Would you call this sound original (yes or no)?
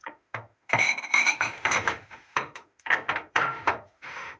no